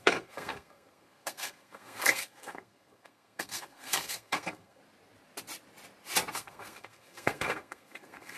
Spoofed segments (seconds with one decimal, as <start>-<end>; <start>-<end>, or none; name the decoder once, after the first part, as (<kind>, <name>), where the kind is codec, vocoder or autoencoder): 0.0-4.8 (codec, SNAC); 6.3-8.4